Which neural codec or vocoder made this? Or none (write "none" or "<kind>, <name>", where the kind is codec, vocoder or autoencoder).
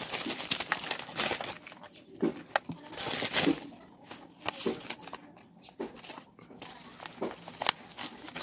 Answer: none